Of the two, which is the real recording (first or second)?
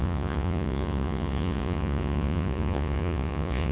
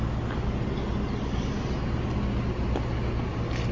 second